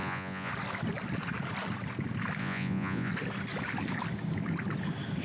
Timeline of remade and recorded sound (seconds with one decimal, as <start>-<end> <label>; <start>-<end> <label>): 0.0-0.5 remade; 0.5-2.4 recorded; 2.4-3.1 remade; 3.1-5.2 recorded